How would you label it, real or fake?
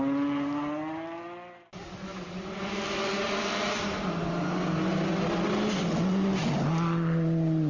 real